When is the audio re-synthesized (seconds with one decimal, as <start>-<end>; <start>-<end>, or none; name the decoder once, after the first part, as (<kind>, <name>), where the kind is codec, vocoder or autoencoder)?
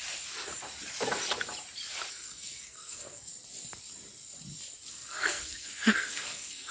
2.1-3.3 (codec, SNAC); 4.9-6.7